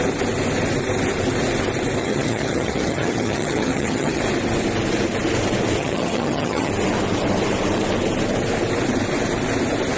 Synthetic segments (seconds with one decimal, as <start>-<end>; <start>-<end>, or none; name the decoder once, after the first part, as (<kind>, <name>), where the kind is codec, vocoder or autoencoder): 2.0-4.2 (vocoder, HiFi-GAN); 5.8-6.7